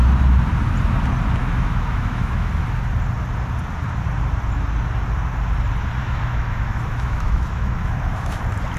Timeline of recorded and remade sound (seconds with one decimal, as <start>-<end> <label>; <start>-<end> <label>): 0.0-1.4 recorded; 1.4-2.5 remade; 2.5-6.0 recorded; 6.0-8.4 remade; 8.4-8.8 recorded